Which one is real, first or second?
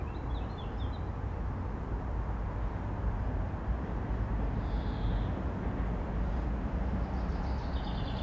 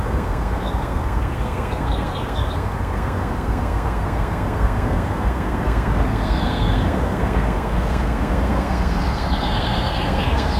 first